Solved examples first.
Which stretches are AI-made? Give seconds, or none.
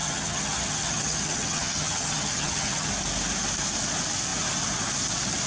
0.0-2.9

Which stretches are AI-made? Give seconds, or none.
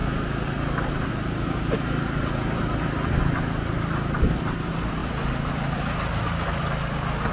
none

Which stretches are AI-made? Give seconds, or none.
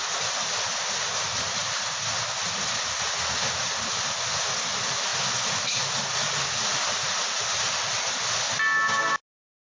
none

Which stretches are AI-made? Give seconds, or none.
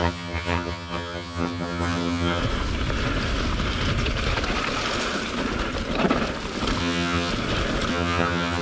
0.0-2.4; 6.8-7.3; 7.9-8.6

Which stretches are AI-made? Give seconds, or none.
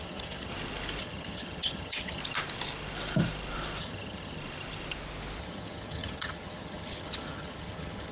0.0-0.5; 1.0-2.2; 3.8-4.4; 5.4-8.1